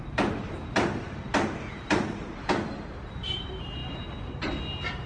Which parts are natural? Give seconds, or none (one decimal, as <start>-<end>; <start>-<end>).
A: 3.8-5.1